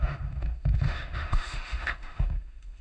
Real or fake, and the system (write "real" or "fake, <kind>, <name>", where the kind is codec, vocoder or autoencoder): fake, autoencoder, DAC-VAE